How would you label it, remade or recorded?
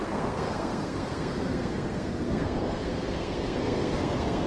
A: remade